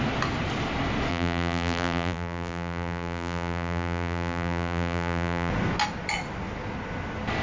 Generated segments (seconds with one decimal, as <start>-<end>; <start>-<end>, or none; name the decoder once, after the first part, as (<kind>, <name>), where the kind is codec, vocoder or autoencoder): 1.1-5.5 (vocoder, BigVGAN v2)